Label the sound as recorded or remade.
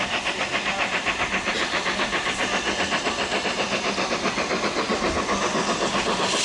recorded